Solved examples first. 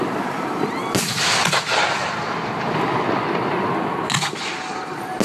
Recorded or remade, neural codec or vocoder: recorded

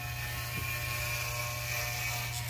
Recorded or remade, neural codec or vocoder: recorded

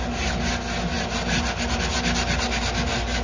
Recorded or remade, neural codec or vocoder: recorded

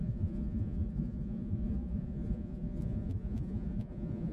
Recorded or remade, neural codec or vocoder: remade, vocoder, Vocos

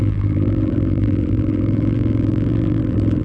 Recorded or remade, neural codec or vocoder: remade, vocoder, BigVGAN v2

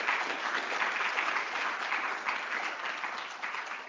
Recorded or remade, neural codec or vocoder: recorded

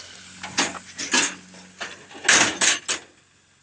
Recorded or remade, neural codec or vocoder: recorded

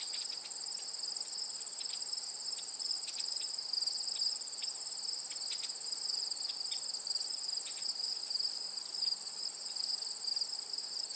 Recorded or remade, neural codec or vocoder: recorded